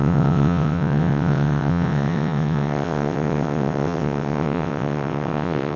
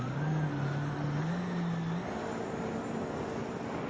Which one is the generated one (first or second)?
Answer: first